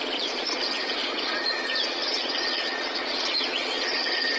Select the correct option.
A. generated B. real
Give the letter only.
A